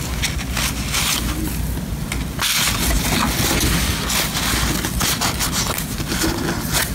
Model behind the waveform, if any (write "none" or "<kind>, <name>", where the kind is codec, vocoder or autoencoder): none